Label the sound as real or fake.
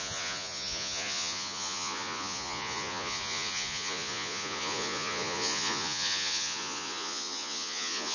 fake